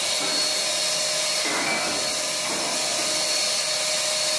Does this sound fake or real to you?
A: real